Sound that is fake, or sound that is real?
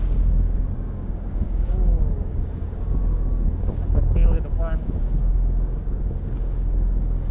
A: fake